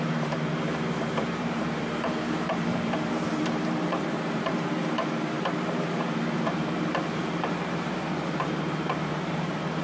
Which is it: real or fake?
fake